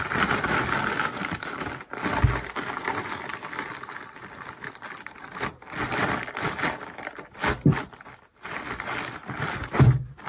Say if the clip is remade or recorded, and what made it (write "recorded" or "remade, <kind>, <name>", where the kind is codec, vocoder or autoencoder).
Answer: recorded